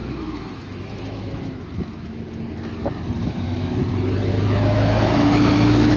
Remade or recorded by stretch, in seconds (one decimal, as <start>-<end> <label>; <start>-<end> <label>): 0.0-2.2 remade; 2.2-3.2 recorded; 3.2-3.8 remade; 3.8-4.3 recorded; 4.3-6.0 remade